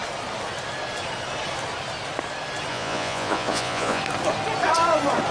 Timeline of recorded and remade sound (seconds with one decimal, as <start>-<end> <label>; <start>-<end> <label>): 0.0-2.7 recorded; 2.7-4.0 remade; 4.0-5.3 recorded